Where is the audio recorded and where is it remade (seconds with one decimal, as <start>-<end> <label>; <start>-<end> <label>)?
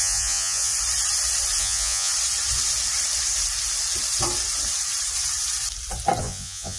0.0-0.7 remade; 0.7-1.6 recorded; 1.6-2.1 remade; 2.1-6.2 recorded; 6.2-6.8 remade